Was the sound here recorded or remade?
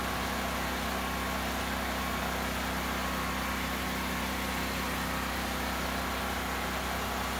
recorded